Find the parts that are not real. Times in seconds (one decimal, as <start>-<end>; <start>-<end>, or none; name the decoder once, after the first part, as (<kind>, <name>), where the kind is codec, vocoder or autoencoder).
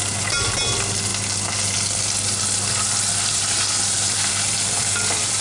4.8-5.4 (vocoder, BigVGAN v2)